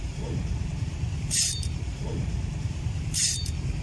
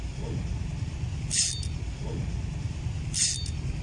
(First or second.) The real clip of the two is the second